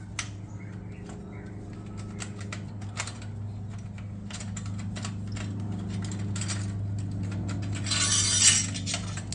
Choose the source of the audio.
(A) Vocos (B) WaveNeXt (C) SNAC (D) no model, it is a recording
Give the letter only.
D